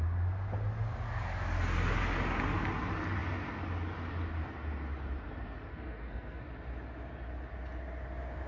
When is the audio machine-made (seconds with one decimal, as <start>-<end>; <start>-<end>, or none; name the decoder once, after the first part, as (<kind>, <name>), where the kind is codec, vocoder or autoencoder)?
5.7-6.4 (codec, SNAC)